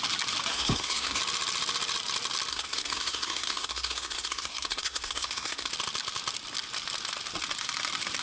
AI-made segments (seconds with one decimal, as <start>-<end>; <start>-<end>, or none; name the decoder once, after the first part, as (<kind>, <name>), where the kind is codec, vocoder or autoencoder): 0.5-1.2 (codec, SNAC); 2.5-5.7